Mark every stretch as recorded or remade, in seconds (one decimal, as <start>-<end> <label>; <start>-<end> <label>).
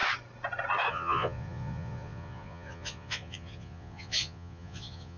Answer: 0.0-0.9 recorded; 0.9-5.2 remade